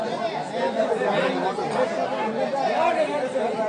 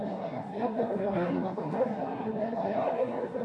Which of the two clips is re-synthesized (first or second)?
second